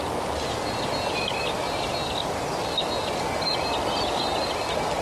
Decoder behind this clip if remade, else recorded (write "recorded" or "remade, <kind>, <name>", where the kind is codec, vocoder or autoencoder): recorded